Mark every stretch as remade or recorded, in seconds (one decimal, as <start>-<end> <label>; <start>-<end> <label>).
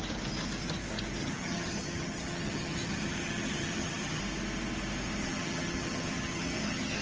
0.0-1.2 recorded; 1.2-4.2 remade; 4.2-5.2 recorded; 5.2-7.0 remade